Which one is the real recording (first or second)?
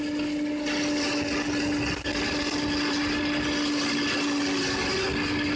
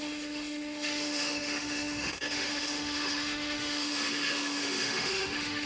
first